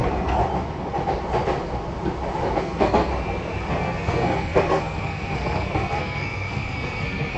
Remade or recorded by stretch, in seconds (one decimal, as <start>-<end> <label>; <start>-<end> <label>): 0.0-0.4 remade; 0.4-2.6 recorded; 2.6-3.1 remade; 3.1-3.7 recorded; 3.7-7.4 remade